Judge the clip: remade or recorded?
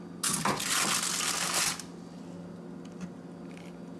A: recorded